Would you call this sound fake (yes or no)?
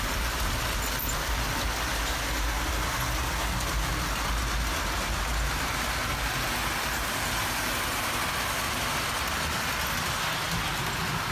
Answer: no